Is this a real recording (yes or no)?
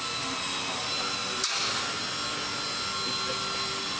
yes